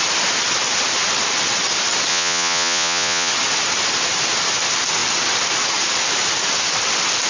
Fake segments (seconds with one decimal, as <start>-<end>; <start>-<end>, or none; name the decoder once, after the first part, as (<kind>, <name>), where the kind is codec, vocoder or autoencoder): 2.1-3.3 (vocoder, Vocos)